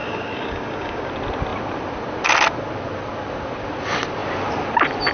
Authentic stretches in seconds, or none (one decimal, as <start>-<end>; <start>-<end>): 1.1-5.1